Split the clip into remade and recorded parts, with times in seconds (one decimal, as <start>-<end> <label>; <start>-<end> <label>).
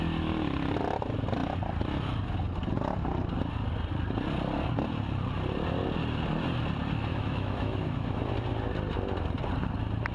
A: 0.0-7.1 recorded; 7.1-8.2 remade; 8.2-10.1 recorded